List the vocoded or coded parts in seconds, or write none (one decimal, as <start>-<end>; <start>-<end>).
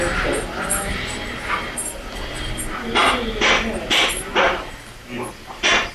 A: none